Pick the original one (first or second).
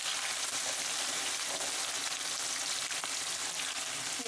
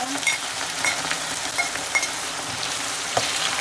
first